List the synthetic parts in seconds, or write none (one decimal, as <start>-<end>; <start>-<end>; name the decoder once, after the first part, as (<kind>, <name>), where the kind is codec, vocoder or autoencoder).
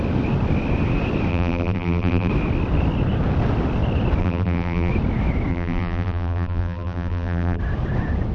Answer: 1.3-2.3 (vocoder, BigVGAN v2); 4.2-4.9; 5.5-7.6